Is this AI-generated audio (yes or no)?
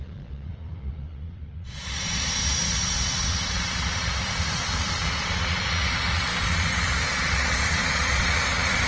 yes